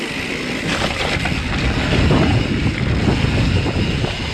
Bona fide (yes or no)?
yes